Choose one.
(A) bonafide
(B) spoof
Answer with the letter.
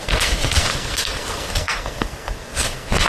B